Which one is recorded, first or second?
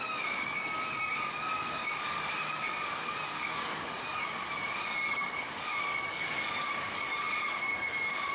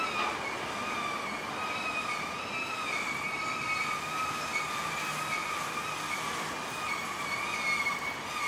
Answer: second